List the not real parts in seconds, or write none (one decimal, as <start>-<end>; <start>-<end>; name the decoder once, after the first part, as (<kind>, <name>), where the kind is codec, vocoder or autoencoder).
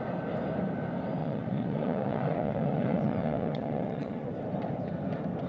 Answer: 1.2-4.3 (vocoder, Vocos)